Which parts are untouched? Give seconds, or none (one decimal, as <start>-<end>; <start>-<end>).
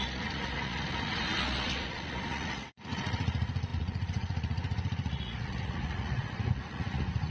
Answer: none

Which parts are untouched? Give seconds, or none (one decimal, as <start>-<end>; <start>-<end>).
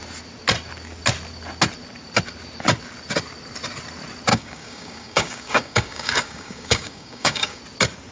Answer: 0.0-4.3; 7.6-8.1